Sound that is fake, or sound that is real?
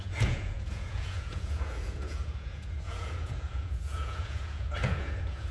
fake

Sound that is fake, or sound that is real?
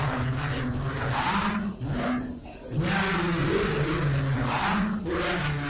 real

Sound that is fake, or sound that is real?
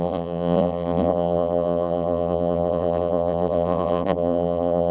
fake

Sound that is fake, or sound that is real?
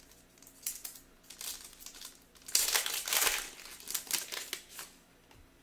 real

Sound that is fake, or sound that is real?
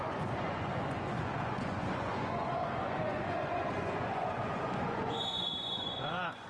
fake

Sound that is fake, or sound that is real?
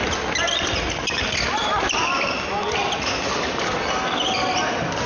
real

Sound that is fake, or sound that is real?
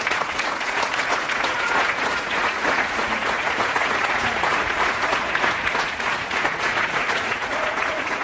fake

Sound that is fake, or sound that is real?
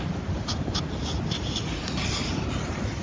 real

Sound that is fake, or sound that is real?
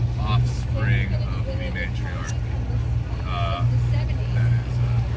real